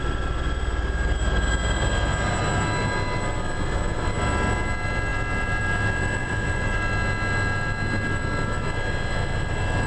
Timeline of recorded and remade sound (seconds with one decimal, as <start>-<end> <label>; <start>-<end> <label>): 0.0-6.2 recorded; 6.2-6.8 remade; 6.8-9.9 recorded